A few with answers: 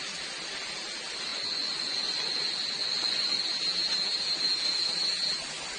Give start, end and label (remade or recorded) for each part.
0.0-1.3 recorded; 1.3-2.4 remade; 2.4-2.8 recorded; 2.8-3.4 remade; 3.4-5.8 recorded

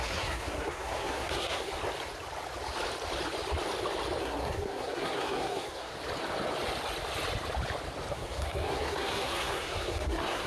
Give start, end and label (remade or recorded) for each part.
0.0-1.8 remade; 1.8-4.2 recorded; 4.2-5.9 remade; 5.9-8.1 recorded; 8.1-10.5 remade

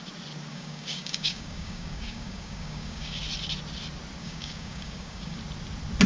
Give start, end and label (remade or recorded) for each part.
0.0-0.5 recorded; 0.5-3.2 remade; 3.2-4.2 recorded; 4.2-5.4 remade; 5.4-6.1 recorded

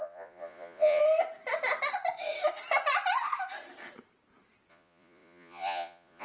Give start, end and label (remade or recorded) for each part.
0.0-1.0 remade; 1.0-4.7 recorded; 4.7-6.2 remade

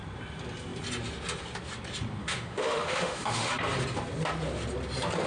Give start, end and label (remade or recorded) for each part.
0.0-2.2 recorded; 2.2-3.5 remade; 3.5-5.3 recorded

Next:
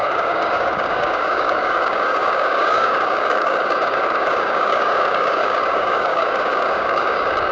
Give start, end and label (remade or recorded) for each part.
0.0-7.5 remade

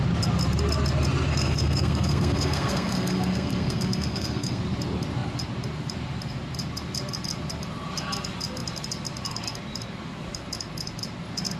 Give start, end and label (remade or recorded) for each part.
0.0-1.3 recorded; 1.3-4.6 remade; 4.6-11.6 recorded

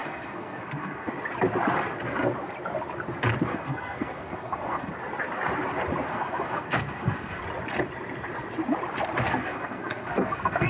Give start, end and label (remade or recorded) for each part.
0.0-1.1 remade; 1.1-3.5 recorded; 3.5-4.9 remade; 4.9-6.1 recorded; 6.1-7.4 remade; 7.4-9.3 recorded; 9.3-10.7 remade